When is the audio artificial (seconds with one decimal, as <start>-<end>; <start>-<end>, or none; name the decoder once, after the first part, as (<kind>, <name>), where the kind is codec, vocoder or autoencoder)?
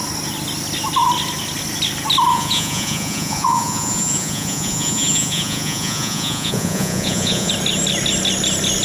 2.3-7.5 (vocoder, Vocos)